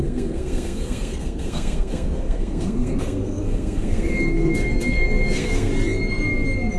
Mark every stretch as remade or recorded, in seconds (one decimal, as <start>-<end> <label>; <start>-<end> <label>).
0.0-5.7 remade; 5.7-6.8 recorded